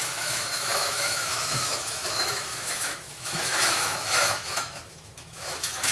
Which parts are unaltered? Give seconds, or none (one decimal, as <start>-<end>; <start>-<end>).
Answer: none